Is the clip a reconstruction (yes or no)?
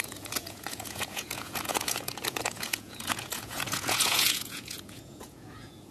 yes